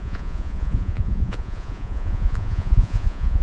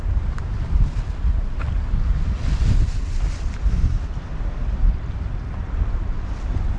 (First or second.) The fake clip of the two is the first